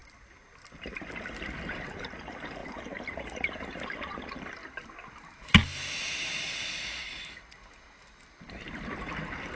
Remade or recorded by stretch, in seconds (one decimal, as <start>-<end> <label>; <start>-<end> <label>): 0.0-2.6 recorded; 2.6-3.2 remade; 3.2-9.6 recorded